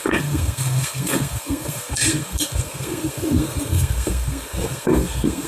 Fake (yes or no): yes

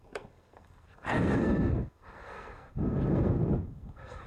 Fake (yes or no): yes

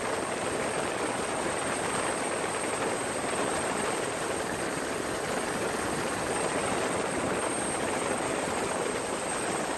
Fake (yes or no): no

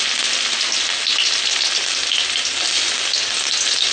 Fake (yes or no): no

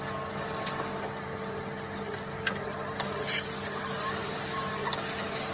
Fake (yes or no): no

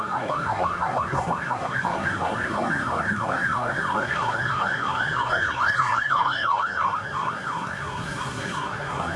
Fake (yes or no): yes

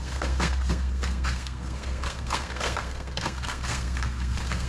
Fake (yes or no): yes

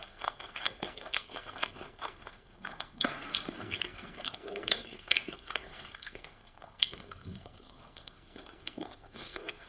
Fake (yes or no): yes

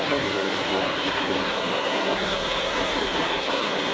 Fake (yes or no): yes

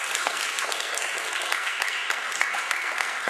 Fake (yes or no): yes